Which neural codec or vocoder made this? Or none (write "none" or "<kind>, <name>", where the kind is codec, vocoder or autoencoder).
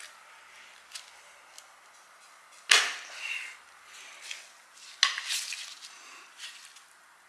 none